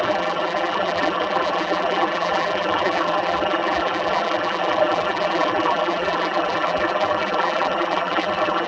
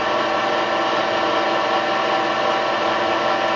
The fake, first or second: first